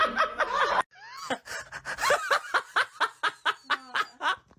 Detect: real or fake real